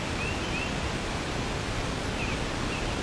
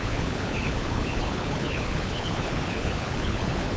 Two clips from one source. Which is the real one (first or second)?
first